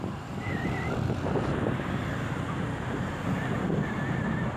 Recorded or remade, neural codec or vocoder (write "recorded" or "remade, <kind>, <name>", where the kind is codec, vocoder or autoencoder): recorded